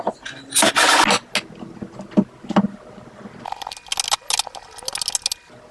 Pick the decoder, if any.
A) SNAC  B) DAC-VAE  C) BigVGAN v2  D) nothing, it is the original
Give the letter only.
D